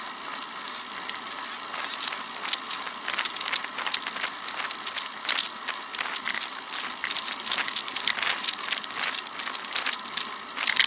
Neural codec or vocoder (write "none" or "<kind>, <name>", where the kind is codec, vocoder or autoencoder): none